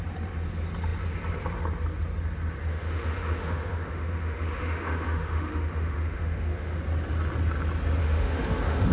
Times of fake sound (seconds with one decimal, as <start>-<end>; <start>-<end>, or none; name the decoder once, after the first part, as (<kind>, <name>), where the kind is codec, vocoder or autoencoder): 2.7-6.8 (autoencoder, DAC-VAE); 8.0-8.9